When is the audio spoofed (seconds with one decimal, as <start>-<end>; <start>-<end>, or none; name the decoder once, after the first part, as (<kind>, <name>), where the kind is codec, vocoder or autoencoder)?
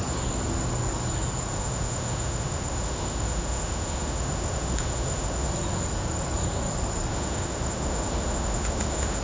1.5-5.5 (autoencoder, DAC-VAE); 7.1-9.2